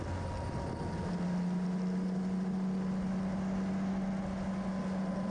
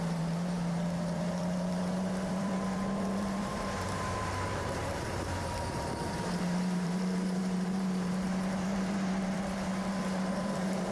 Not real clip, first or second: second